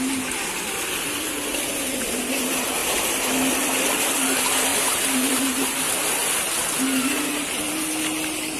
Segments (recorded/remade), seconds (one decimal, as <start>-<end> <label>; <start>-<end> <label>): 0.0-4.7 recorded; 4.7-5.4 remade; 5.4-8.6 recorded